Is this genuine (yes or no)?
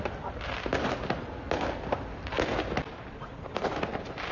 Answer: yes